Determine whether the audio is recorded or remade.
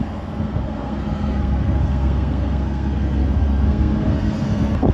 remade